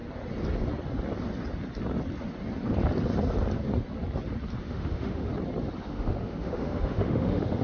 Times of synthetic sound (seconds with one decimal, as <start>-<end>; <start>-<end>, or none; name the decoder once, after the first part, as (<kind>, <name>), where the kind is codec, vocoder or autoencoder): 4.6-5.3 (autoencoder, DAC-VAE); 5.8-7.6